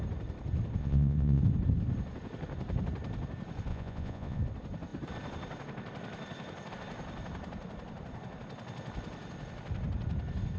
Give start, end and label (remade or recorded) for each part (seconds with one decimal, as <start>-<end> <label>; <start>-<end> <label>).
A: 0.0-0.8 recorded; 0.8-1.4 remade; 1.4-3.7 recorded; 3.7-4.4 remade; 4.4-10.6 recorded